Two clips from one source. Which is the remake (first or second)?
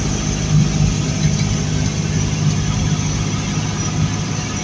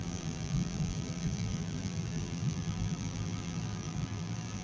second